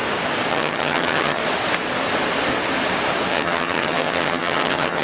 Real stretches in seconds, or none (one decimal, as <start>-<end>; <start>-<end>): 0.0-0.5; 1.4-3.3